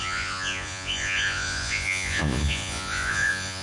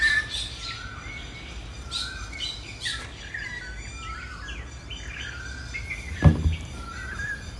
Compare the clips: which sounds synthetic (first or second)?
first